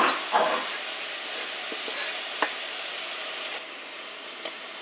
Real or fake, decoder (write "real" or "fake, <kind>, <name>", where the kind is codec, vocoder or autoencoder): real